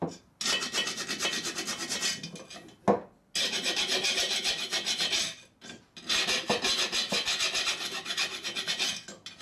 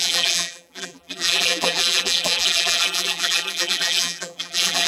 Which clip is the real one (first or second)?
first